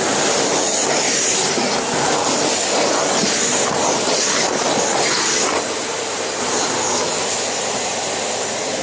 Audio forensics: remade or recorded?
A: recorded